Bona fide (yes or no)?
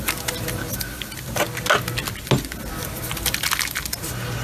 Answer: yes